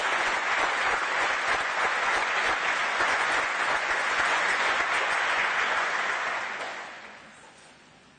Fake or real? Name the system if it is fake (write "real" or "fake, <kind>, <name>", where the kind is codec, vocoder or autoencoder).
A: fake, vocoder, Vocos